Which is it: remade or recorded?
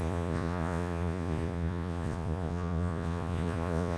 remade